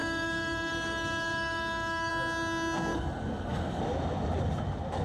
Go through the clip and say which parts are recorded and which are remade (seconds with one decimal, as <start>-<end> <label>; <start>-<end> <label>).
0.0-2.1 remade; 2.1-2.9 recorded; 2.9-3.8 remade; 3.8-5.0 recorded